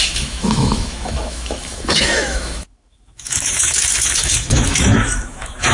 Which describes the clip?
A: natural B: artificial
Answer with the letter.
B